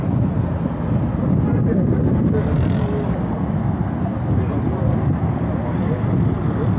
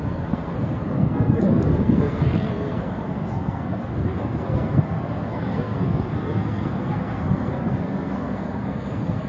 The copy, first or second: second